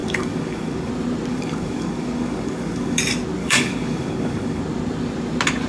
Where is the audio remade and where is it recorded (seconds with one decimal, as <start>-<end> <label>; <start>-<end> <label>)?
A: 0.0-0.9 remade; 0.9-1.3 recorded; 1.3-3.0 remade; 3.0-3.4 recorded; 3.4-4.6 remade; 4.6-5.7 recorded